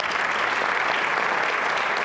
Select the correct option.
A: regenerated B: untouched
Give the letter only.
B